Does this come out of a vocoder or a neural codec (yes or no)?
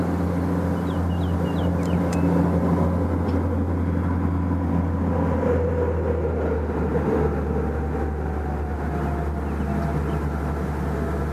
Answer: no